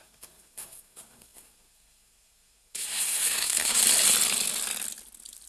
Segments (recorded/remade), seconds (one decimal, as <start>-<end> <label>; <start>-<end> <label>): 0.0-3.8 remade; 3.8-5.5 recorded